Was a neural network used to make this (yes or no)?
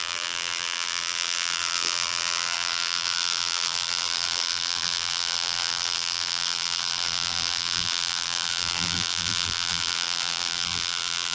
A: yes